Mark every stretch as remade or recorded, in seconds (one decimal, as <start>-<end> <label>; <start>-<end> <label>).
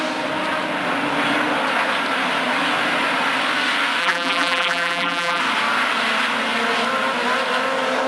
0.0-4.0 recorded; 4.0-5.4 remade; 5.4-8.1 recorded